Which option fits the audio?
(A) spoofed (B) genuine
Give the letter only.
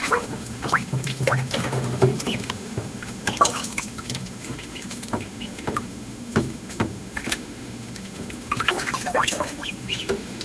A